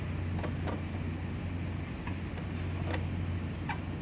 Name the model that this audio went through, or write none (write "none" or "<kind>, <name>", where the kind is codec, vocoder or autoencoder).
none